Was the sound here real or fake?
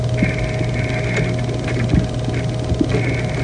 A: real